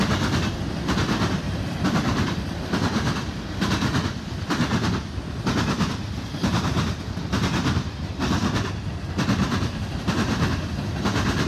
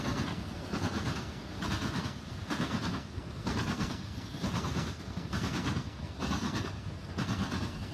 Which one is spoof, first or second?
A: second